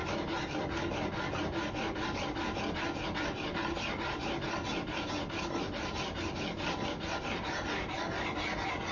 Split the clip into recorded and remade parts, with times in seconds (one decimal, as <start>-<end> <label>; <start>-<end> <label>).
0.0-8.9 recorded